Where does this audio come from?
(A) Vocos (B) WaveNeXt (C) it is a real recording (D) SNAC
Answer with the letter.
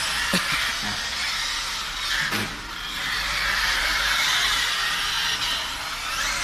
C